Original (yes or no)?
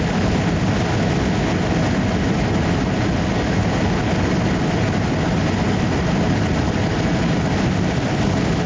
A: yes